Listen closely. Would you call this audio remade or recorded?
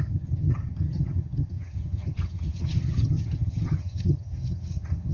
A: remade